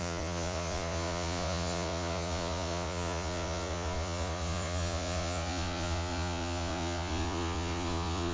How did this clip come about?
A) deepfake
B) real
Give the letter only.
A